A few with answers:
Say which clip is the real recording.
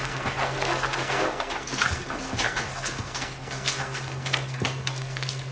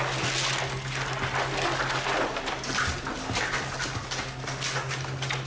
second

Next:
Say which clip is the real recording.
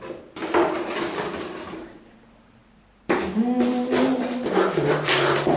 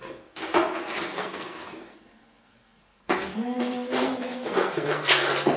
first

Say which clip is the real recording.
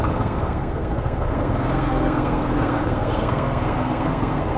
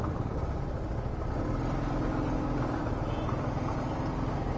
second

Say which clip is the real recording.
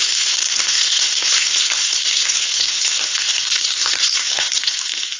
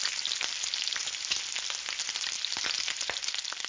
second